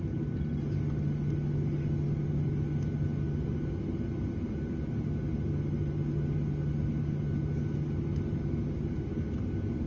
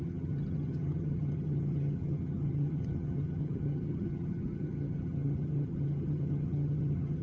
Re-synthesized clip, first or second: second